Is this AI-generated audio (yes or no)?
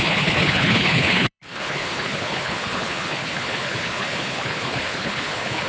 yes